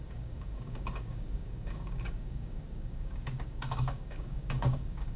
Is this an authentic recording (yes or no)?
no